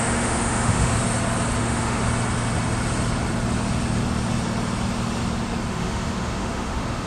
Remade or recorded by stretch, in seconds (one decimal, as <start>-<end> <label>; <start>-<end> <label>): 0.0-0.9 remade; 0.9-1.6 recorded; 1.6-2.0 remade; 2.0-5.7 recorded; 5.7-7.1 remade